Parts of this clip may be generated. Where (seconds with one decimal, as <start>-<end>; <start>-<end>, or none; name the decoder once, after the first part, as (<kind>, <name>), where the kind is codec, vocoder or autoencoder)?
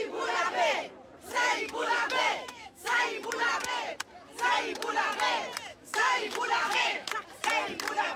1.4-3.0 (autoencoder, DAC-VAE); 5.7-7.1